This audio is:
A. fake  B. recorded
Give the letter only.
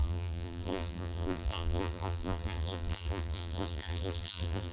A